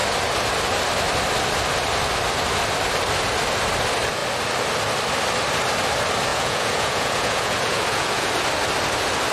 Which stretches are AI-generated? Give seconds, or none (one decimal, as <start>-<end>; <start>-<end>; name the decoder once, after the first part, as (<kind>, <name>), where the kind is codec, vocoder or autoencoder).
6.3-8.3 (vocoder, Vocos)